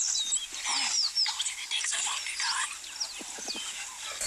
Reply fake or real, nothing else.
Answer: real